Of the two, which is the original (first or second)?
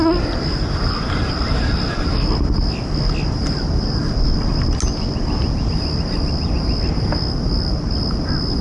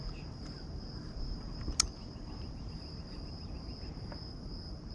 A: first